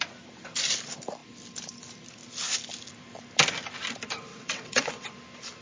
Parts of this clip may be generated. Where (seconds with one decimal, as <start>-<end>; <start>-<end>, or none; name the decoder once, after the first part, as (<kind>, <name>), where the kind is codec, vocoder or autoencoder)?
4.3-5.1 (vocoder, WaveNeXt)